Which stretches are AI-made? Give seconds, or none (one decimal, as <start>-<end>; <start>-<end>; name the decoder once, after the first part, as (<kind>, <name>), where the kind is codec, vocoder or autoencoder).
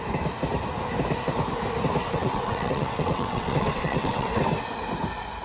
2.0-4.4 (vocoder, WaveNeXt)